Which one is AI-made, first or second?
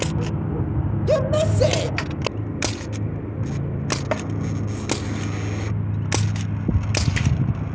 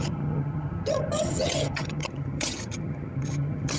second